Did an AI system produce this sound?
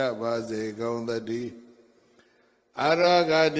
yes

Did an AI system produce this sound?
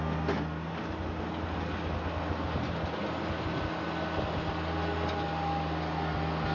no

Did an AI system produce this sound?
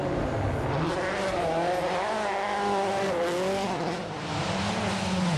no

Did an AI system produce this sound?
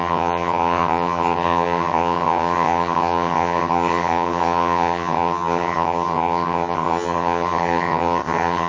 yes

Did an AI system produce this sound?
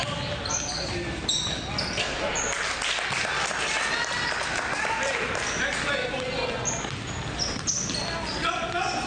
no